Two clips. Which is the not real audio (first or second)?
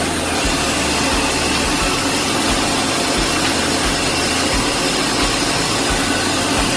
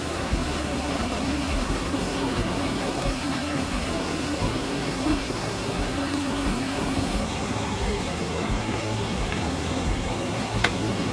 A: second